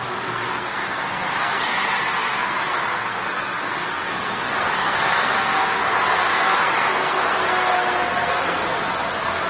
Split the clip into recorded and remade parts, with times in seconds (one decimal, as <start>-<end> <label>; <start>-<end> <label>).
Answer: 0.0-9.5 remade